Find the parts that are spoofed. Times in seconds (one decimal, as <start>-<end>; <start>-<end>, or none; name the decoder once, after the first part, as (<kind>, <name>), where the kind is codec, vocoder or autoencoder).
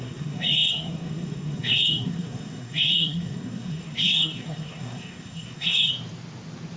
0.0-5.9 (codec, SNAC)